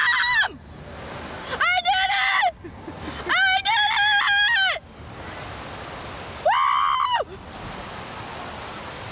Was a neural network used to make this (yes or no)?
no